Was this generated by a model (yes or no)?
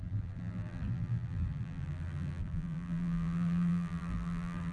yes